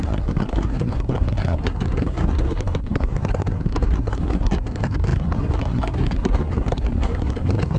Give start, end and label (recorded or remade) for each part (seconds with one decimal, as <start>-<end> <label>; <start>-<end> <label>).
0.0-7.8 remade